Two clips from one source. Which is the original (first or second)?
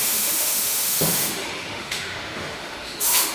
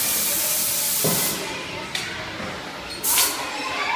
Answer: second